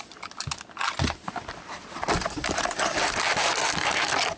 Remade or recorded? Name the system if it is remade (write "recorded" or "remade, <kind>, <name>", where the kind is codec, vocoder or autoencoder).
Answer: recorded